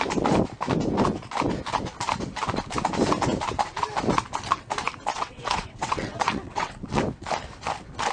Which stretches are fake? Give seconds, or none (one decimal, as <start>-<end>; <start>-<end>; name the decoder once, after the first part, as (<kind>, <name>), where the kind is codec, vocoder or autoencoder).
5.1-7.0 (vocoder, WaveNeXt)

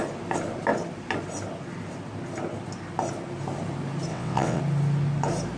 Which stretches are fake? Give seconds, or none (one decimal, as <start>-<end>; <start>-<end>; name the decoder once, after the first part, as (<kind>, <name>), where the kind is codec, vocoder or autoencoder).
4.1-4.6 (vocoder, WaveNeXt)

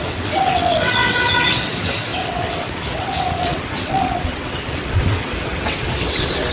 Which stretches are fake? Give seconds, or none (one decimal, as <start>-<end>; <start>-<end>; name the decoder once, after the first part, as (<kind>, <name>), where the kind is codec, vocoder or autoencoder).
0.0-6.5 (vocoder, WaveNeXt)